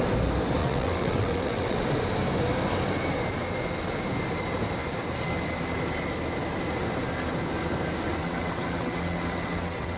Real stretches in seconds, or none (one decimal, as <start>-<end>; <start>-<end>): 0.0-0.6; 1.9-8.2